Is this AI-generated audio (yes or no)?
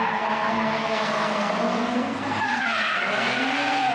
yes